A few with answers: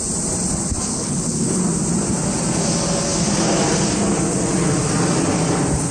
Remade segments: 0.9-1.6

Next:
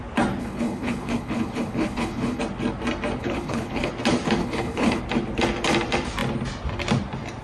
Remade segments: 0.4-2.4; 3.2-3.9; 4.4-5.0

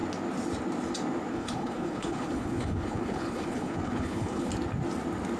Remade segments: 1.3-4.5

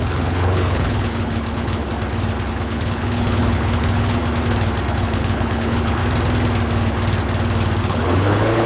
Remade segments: 0.0-1.8; 2.5-4.2; 4.9-6.0; 7.8-8.7

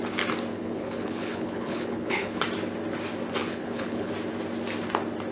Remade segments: 0.5-2.4; 3.4-4.1

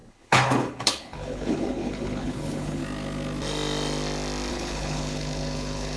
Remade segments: 0.0-2.8; 4.5-6.0